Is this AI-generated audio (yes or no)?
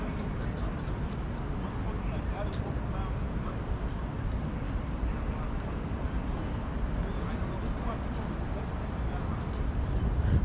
no